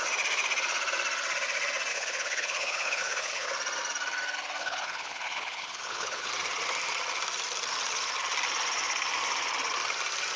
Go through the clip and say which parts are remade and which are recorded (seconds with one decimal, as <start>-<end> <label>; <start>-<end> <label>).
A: 0.0-1.9 recorded; 1.9-3.5 remade; 3.5-4.6 recorded; 4.6-6.3 remade; 6.3-10.4 recorded